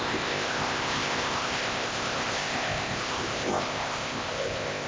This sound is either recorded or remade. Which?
remade